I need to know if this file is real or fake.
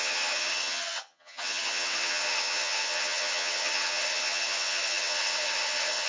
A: fake